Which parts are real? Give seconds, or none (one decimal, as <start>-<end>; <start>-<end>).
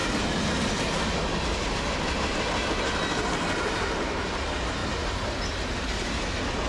0.0-6.7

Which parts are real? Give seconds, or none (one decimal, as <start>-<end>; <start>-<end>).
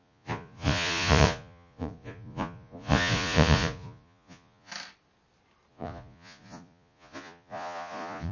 4.7-5.7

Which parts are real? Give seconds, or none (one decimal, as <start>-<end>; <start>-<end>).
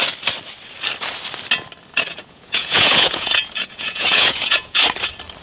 0.0-2.1; 4.8-5.4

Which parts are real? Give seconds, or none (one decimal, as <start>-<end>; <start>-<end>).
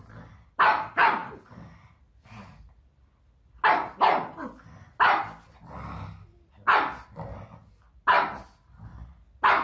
0.0-9.6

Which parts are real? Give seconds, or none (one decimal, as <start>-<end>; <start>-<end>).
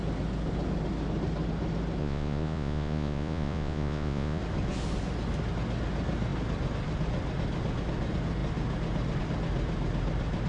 0.0-2.0; 4.4-10.5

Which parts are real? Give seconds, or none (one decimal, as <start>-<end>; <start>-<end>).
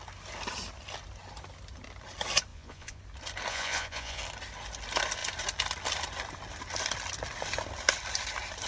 0.0-2.5; 3.0-3.5; 4.2-8.7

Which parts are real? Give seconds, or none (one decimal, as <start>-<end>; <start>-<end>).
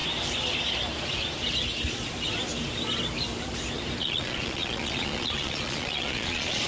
0.0-4.0